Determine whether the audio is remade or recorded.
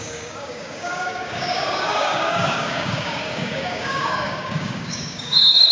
remade